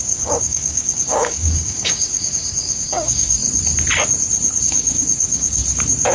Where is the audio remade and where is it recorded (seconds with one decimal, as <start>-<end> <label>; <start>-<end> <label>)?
0.0-3.4 remade; 3.4-4.6 recorded; 4.6-5.6 remade; 5.6-6.1 recorded